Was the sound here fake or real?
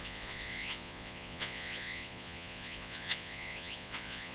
fake